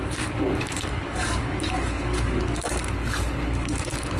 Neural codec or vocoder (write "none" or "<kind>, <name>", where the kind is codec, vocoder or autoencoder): codec, DAC